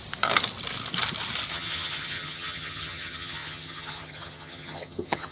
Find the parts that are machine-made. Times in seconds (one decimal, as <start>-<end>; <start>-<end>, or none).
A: 1.5-5.3